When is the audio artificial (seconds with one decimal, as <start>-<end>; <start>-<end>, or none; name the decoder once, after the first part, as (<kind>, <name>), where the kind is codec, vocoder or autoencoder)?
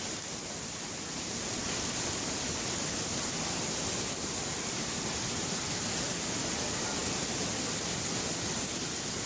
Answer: none